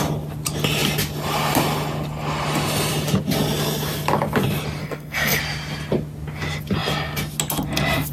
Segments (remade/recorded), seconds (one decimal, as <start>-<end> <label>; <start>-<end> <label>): 0.0-4.8 recorded; 4.8-5.4 remade; 5.4-8.1 recorded